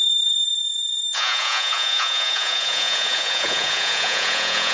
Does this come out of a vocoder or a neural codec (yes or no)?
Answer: yes